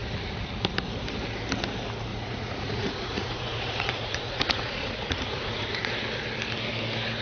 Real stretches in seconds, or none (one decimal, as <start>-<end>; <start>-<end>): 0.0-2.1; 5.9-7.2